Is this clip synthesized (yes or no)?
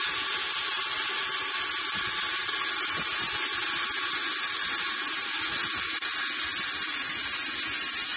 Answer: no